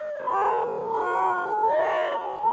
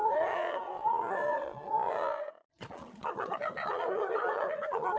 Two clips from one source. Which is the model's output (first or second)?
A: second